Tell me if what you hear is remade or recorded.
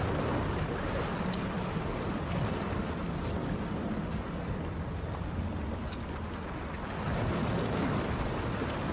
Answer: recorded